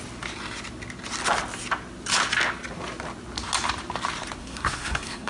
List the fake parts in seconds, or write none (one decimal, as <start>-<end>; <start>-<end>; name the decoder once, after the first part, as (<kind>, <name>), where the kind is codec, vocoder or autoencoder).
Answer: 4.4-5.3 (codec, SNAC)